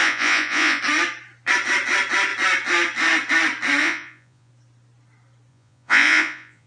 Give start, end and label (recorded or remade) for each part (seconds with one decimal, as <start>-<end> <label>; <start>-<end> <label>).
0.0-0.8 remade; 0.8-3.8 recorded; 3.8-4.5 remade; 4.5-5.5 recorded; 5.5-6.7 remade